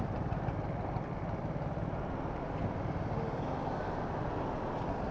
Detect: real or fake real